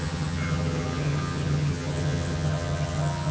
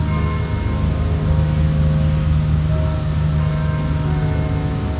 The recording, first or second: second